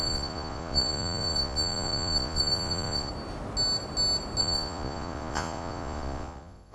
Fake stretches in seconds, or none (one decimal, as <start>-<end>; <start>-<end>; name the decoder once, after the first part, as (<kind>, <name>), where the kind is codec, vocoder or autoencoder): 0.0-3.1 (vocoder, Vocos); 4.4-6.7